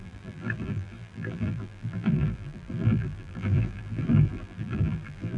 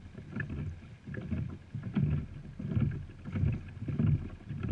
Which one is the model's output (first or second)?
first